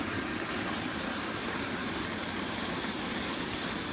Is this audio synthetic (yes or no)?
no